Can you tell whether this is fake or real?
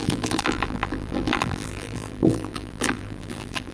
fake